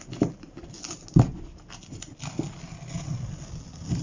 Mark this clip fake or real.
real